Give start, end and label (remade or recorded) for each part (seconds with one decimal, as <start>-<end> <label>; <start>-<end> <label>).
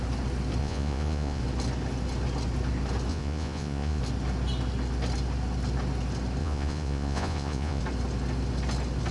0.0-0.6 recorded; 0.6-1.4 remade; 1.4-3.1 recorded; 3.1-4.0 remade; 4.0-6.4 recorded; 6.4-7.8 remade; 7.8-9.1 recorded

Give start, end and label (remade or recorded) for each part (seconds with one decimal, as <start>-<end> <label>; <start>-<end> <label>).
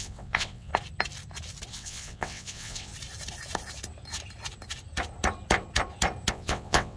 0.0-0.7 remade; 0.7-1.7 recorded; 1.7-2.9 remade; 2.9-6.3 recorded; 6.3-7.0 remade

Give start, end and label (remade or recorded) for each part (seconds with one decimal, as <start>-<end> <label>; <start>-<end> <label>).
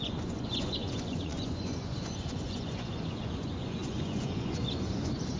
0.0-5.4 remade